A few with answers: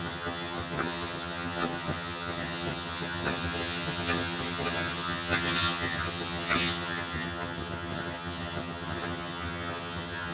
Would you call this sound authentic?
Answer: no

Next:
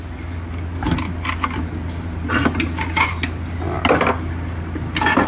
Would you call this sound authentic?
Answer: yes